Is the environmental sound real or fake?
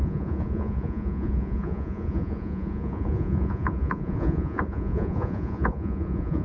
fake